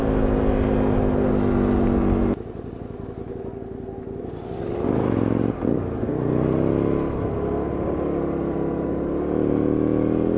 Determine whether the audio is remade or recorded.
recorded